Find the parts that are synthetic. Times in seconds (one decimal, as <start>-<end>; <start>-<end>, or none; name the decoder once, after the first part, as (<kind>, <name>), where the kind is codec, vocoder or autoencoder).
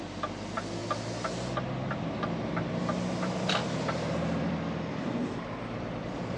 0.0-0.8 (vocoder, BigVGAN v2); 4.1-6.4